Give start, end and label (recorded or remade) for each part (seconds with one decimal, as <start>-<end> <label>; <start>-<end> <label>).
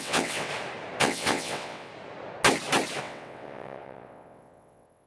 0.0-0.5 remade; 0.5-1.0 recorded; 1.0-1.9 remade; 1.9-3.0 recorded; 3.0-5.1 remade